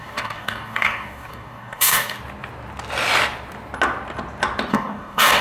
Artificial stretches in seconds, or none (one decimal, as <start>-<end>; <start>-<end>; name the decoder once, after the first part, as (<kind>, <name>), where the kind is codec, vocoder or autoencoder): 0.0-2.2 (codec, DAC); 4.7-5.4